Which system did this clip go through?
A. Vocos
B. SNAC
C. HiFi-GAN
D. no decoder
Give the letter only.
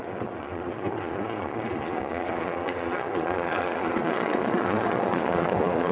A